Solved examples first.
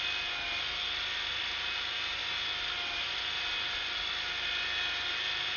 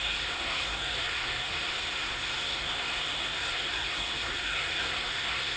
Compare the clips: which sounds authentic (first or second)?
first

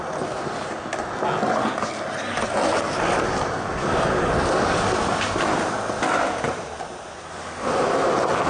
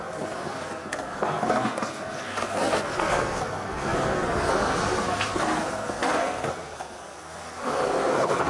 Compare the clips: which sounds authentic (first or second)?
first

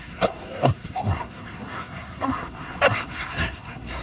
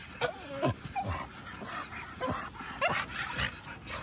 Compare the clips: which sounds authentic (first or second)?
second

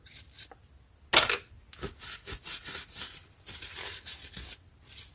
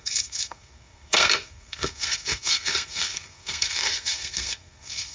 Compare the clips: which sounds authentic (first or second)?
first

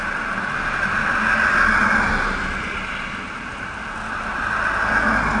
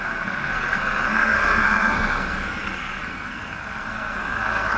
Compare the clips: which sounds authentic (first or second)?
first